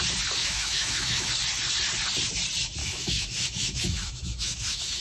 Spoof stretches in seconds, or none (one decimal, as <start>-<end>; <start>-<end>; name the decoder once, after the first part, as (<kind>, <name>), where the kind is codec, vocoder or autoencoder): 0.4-1.3 (autoencoder, DAC-VAE); 2.8-5.0